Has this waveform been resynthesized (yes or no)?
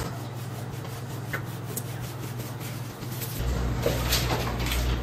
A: no